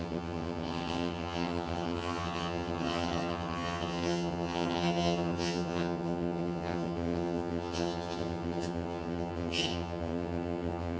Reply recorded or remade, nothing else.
remade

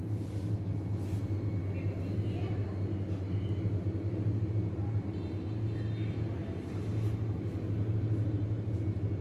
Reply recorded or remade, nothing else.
recorded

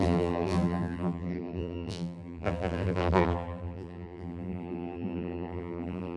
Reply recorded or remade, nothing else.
remade